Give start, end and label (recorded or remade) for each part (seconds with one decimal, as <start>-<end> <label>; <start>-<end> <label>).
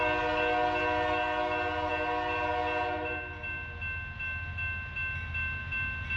0.0-6.2 recorded